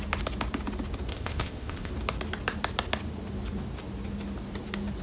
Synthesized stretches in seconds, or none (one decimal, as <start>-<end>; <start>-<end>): 1.1-1.9